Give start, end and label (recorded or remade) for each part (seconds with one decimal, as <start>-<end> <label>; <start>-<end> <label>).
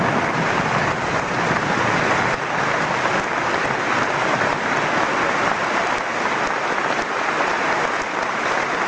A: 0.0-0.8 recorded; 0.8-1.3 remade; 1.3-8.9 recorded